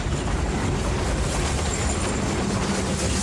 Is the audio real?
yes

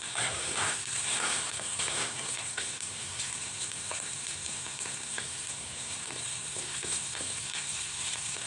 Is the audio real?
no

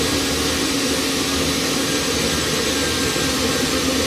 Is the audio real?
yes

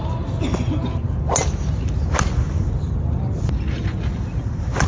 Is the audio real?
yes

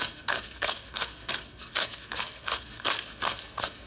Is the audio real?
no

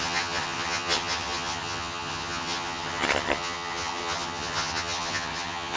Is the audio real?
no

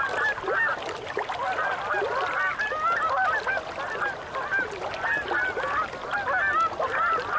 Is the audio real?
yes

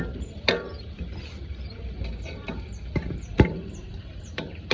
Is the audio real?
no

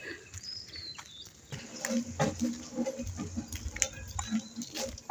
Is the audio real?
yes